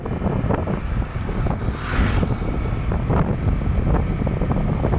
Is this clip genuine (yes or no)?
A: yes